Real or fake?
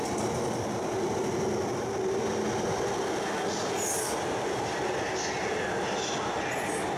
real